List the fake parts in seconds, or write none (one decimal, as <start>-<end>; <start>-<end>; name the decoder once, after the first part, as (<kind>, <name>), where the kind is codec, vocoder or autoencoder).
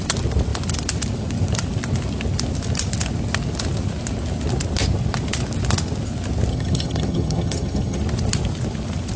6.5-8.0 (vocoder, HiFi-GAN)